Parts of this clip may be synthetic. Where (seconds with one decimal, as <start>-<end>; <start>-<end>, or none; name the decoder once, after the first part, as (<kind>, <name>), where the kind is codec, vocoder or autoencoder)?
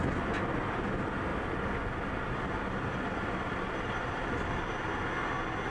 1.3-4.7 (vocoder, BigVGAN v2)